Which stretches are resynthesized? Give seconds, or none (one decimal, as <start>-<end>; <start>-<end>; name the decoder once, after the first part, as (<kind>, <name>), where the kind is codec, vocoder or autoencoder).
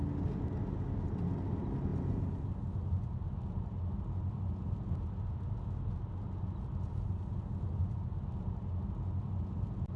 none